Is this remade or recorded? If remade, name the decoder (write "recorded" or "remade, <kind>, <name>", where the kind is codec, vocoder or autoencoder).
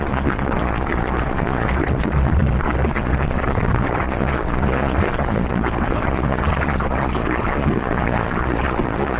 remade, vocoder, Vocos